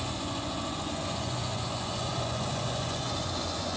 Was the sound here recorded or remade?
remade